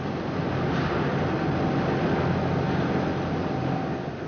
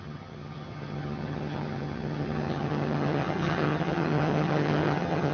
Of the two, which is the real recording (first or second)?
first